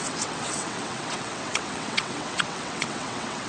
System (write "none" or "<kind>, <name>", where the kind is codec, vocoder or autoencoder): vocoder, WaveNeXt